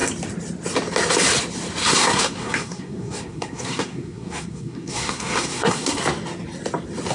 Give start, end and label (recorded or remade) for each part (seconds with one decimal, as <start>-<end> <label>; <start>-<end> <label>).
0.0-1.8 recorded; 1.8-6.0 remade; 6.0-7.1 recorded